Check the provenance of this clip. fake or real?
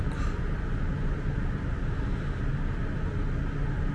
real